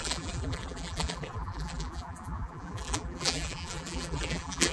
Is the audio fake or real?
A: fake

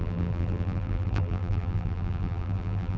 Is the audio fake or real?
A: fake